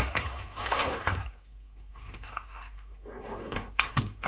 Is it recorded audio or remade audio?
remade